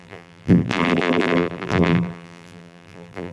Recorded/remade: remade